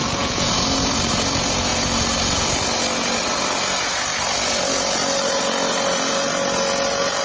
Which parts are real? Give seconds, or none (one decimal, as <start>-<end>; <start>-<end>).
0.5-7.2